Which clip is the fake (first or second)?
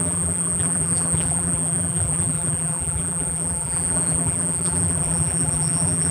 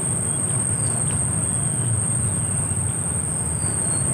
first